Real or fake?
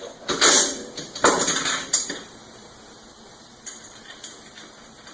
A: fake